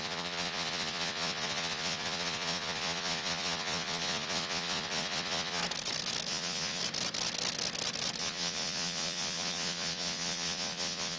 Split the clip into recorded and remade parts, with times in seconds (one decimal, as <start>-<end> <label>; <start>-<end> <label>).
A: 0.0-5.6 remade; 5.6-6.3 recorded; 6.3-6.8 remade; 6.8-8.2 recorded; 8.2-11.2 remade